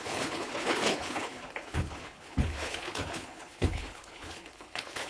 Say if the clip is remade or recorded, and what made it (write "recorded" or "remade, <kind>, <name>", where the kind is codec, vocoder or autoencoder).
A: remade, codec, HILCodec